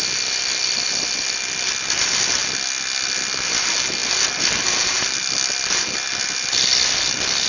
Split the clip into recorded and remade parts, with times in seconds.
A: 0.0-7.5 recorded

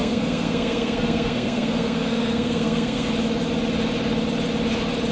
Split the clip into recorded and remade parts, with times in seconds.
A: 0.0-3.1 remade; 3.1-5.1 recorded

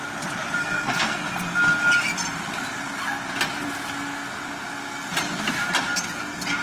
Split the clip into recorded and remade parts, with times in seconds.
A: 0.0-0.6 recorded; 0.6-1.3 remade; 1.3-6.6 recorded

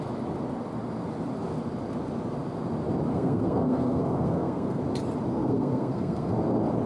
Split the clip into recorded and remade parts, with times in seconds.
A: 0.0-3.1 recorded; 3.1-4.8 remade; 4.8-5.3 recorded; 5.3-6.3 remade; 6.3-6.9 recorded

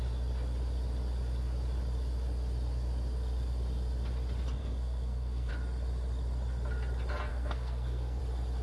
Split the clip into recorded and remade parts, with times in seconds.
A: 0.0-4.6 recorded; 4.6-5.5 remade; 5.5-7.3 recorded; 7.3-8.2 remade; 8.2-8.6 recorded